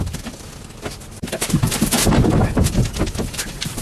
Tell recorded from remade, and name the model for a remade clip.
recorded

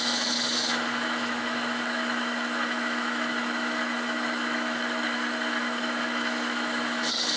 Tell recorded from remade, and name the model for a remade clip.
remade, autoencoder, DAC-VAE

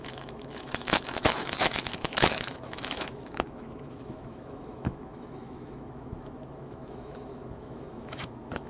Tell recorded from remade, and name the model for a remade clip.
remade, autoencoder, DAC-VAE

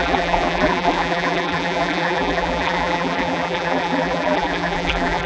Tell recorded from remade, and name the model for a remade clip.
remade, vocoder, BigVGAN v2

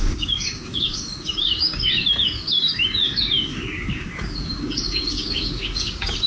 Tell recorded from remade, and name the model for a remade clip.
remade, codec, DAC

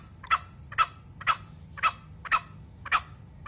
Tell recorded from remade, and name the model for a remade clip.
recorded